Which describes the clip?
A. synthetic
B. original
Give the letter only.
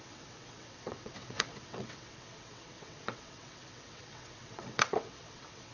A